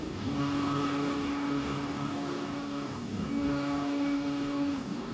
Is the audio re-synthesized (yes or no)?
yes